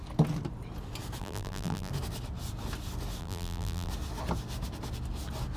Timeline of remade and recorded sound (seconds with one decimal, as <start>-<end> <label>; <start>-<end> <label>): 0.0-1.2 recorded; 1.2-1.9 remade; 1.9-3.2 recorded; 3.2-3.9 remade; 3.9-5.6 recorded